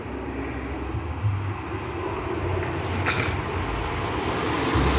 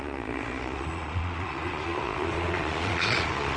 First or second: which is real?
first